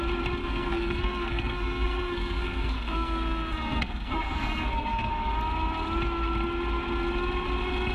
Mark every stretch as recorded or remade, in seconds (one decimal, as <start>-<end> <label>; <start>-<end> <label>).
0.0-0.4 recorded; 0.4-5.1 remade; 5.1-7.9 recorded